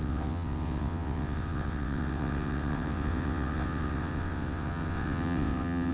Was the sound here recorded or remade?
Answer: remade